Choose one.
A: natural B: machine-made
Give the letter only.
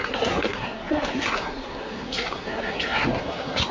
B